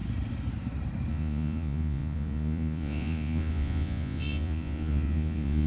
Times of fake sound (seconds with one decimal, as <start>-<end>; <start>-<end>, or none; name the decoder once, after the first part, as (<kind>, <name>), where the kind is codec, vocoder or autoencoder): 1.1-5.7 (vocoder, Vocos)